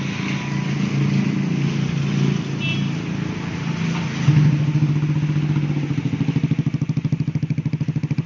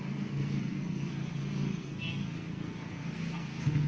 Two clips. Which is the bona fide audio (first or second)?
first